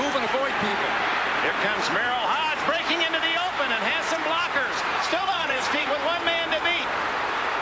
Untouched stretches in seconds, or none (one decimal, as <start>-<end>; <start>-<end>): 0.0-4.9; 5.9-7.6